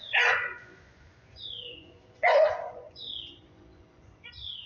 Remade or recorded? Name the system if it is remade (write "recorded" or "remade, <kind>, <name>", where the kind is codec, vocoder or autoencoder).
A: remade, vocoder, Vocos